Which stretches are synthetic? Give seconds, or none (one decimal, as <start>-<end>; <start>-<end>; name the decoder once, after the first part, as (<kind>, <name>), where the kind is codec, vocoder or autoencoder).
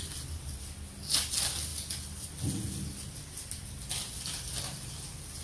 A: none